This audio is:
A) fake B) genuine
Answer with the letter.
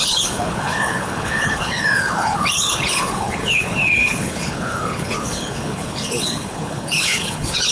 A